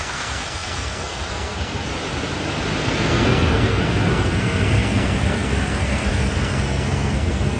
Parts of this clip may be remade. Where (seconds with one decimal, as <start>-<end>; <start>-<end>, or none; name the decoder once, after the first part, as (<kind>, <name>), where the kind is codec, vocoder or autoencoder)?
0.0-1.9 (codec, SNAC); 2.8-7.6